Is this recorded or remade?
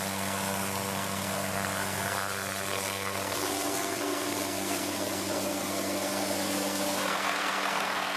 remade